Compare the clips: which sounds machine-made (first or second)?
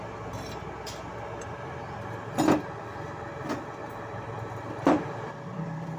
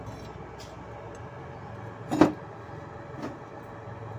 first